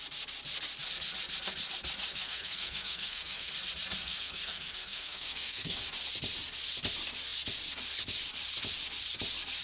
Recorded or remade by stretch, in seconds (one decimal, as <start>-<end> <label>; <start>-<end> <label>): 0.0-2.1 recorded; 2.1-3.5 remade; 3.5-4.0 recorded; 4.0-5.8 remade; 5.8-9.6 recorded